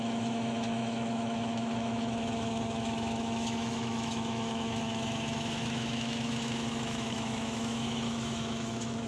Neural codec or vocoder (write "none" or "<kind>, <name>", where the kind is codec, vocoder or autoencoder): autoencoder, DAC-VAE